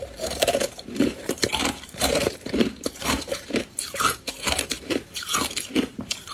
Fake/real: fake